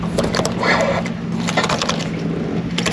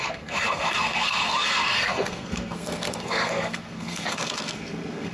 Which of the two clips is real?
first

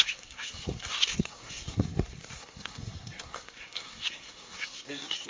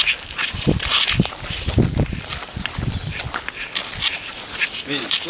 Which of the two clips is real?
second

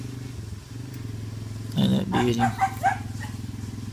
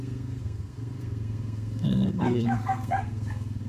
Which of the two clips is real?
first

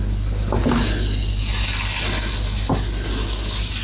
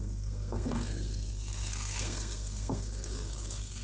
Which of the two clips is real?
first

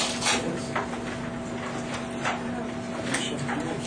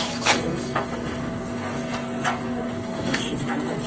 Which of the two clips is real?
first